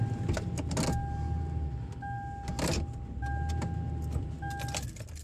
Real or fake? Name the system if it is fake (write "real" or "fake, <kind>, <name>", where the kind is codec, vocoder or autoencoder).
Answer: real